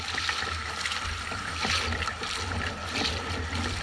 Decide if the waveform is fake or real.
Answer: real